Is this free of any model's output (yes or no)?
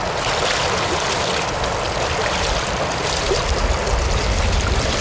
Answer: yes